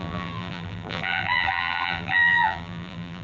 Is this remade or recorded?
remade